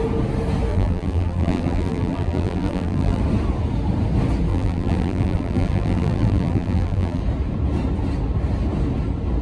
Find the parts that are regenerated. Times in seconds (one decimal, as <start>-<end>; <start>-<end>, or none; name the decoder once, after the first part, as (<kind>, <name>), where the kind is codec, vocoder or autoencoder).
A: 0.7-3.2 (vocoder, BigVGAN v2); 4.5-7.2

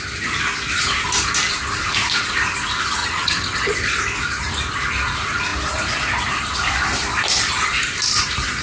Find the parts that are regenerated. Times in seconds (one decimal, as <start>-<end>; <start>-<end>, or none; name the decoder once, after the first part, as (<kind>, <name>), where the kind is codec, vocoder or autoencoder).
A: 3.0-3.7 (vocoder, HiFi-GAN)

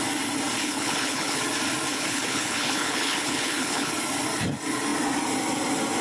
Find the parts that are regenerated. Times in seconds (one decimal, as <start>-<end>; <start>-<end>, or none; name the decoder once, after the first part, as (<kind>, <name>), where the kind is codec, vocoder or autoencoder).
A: 0.6-1.4 (codec, HILCodec); 1.9-3.9

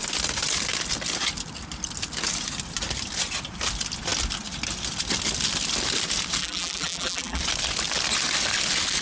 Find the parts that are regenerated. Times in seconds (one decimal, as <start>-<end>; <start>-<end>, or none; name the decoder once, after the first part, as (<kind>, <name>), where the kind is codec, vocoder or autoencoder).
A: 6.4-7.4 (vocoder, BigVGAN v2)

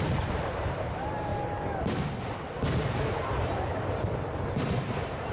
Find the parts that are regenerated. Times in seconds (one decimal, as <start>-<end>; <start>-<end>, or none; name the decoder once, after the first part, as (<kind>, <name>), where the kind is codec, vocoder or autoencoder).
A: 0.0-1.3 (vocoder, BigVGAN v2); 4.5-5.3

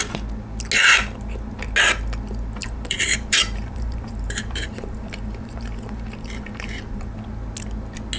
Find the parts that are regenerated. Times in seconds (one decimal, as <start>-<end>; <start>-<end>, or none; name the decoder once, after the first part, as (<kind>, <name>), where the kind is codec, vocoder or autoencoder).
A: 2.6-7.2 (vocoder, BigVGAN v2)